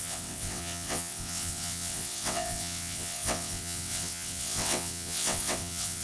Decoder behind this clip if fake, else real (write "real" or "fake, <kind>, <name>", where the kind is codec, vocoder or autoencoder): fake, vocoder, WaveNeXt